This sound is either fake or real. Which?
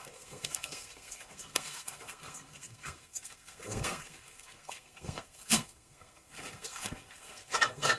fake